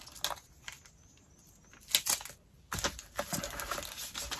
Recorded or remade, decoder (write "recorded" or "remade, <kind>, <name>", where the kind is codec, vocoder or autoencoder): recorded